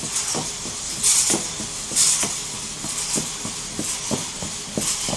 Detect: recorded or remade recorded